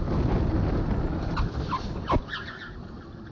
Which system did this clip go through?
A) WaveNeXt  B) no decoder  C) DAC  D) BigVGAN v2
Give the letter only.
B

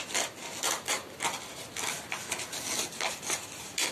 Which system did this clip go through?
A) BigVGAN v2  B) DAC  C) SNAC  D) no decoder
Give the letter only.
D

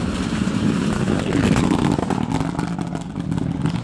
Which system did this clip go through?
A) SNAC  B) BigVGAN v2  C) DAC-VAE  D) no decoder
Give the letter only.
D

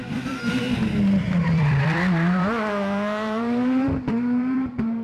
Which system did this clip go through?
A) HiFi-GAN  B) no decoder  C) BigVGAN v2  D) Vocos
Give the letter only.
C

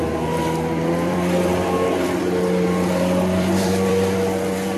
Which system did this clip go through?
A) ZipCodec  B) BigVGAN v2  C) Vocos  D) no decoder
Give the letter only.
B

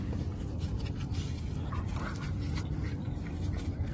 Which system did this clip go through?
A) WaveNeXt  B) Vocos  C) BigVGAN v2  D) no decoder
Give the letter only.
C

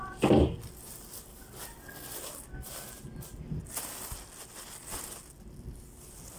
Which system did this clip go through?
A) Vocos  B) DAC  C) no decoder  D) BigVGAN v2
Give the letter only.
C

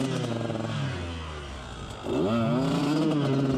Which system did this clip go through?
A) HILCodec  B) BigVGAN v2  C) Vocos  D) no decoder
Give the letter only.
D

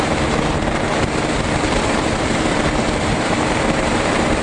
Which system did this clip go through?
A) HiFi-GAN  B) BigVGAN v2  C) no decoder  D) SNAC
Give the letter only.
B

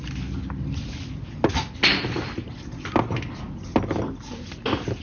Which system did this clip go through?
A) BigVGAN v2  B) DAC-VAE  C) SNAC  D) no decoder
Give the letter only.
D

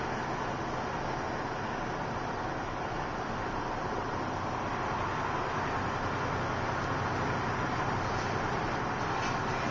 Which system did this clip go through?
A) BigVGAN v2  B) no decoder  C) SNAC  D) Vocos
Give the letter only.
B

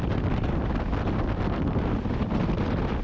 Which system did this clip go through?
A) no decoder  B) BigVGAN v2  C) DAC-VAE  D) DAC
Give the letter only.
A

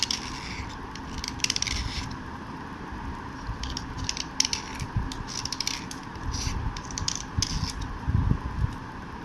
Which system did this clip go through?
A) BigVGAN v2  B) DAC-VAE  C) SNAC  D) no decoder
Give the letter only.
D